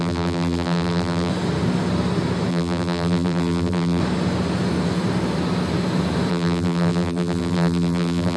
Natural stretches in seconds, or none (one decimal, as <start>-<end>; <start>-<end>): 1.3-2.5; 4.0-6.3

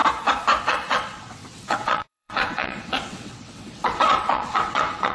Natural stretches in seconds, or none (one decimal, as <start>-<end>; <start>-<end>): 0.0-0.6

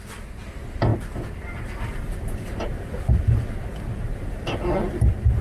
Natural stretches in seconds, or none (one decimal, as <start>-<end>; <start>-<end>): 0.0-3.9; 5.0-5.4

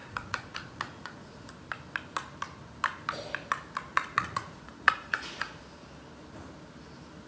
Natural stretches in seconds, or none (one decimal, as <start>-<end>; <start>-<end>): 1.5-3.9; 5.6-7.3

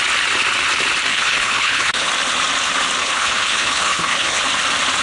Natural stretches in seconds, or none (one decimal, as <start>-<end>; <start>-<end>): 0.0-1.1; 2.1-3.0; 4.4-5.0